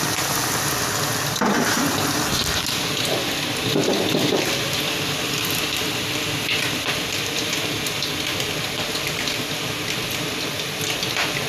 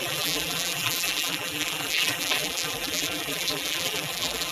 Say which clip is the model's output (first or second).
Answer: second